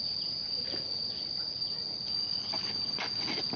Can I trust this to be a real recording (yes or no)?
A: yes